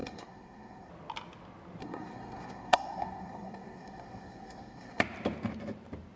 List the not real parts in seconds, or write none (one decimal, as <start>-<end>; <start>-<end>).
0.0-0.9; 1.8-5.0